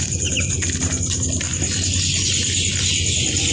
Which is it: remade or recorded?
recorded